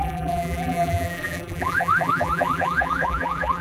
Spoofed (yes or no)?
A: yes